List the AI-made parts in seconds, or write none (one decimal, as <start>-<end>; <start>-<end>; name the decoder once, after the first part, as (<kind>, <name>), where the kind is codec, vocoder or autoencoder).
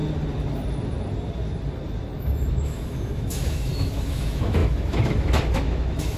2.2-6.2 (autoencoder, DAC-VAE)